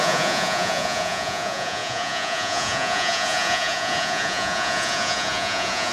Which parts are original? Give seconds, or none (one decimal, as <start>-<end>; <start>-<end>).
none